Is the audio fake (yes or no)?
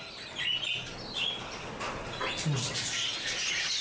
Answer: no